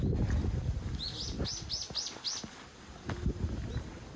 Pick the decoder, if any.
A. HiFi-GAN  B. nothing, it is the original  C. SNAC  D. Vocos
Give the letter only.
B